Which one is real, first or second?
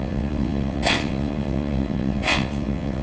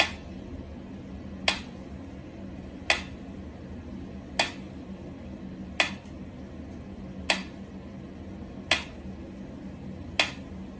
second